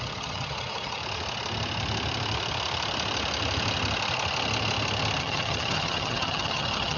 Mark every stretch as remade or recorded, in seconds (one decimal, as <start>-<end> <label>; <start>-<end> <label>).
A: 0.0-1.0 remade; 1.0-5.2 recorded; 5.2-7.0 remade